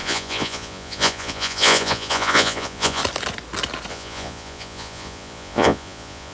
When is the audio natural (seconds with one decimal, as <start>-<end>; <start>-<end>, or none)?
3.0-3.9